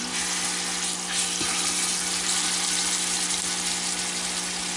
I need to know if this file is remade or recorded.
recorded